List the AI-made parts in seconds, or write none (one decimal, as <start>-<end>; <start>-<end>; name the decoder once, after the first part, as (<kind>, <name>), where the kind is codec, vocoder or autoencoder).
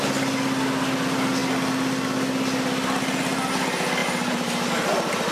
4.0-4.7 (vocoder, BigVGAN v2)